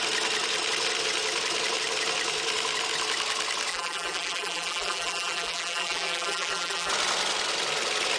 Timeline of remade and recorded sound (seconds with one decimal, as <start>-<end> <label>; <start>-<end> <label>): 0.0-3.7 recorded; 3.7-6.9 remade; 6.9-8.2 recorded